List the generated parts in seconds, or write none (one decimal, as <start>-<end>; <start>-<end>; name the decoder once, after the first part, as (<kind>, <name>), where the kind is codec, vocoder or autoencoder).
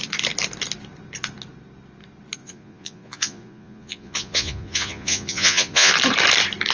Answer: 2.4-5.9 (vocoder, Vocos)